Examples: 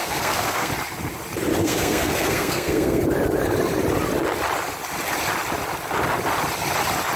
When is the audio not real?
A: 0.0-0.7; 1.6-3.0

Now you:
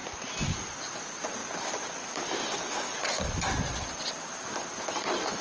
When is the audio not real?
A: 1.4-3.8